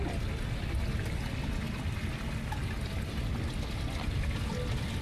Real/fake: real